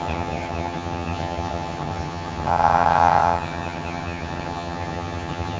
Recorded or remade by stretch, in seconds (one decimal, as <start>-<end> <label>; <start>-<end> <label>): 0.0-5.6 remade